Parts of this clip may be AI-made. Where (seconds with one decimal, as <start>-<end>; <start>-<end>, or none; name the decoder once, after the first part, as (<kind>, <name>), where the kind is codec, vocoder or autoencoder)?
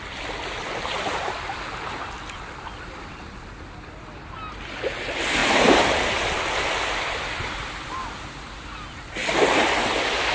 5.4-6.6 (vocoder, BigVGAN v2); 9.2-9.9